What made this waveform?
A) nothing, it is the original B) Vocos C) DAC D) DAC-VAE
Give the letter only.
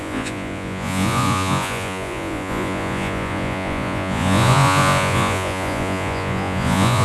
B